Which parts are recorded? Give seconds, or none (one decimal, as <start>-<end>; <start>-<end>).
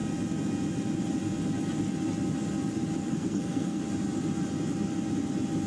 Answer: 0.0-3.0; 3.8-5.7